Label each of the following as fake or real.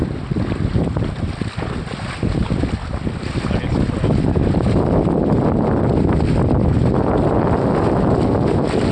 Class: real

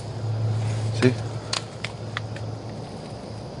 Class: real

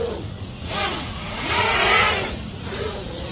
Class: fake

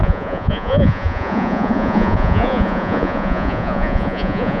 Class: fake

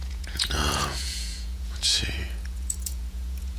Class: fake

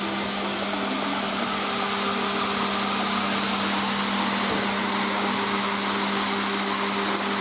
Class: real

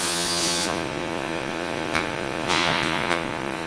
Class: fake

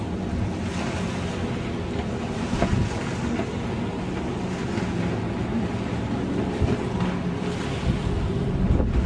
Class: real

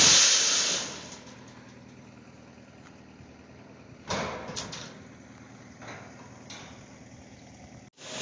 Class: real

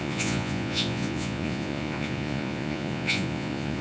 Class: fake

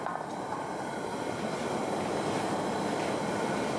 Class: real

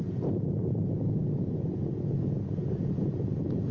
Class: fake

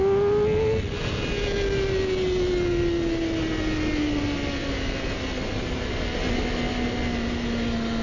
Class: real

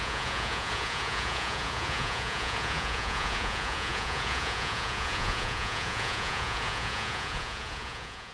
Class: fake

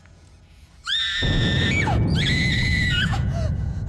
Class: fake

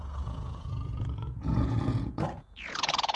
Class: fake